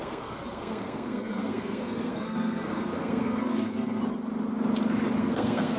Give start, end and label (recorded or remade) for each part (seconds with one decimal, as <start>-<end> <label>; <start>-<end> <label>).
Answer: 0.0-4.0 remade; 4.0-5.2 recorded; 5.2-5.8 remade